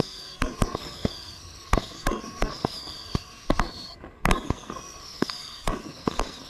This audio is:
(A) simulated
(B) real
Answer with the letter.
A